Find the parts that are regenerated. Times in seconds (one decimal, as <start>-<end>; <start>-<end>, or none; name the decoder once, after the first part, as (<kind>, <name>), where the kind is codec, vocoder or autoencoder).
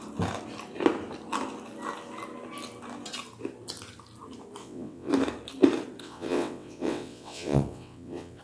4.6-5.1 (vocoder, WaveNeXt); 6.0-8.4